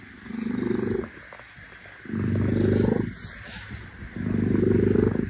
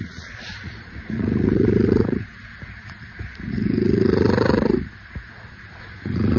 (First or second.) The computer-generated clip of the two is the second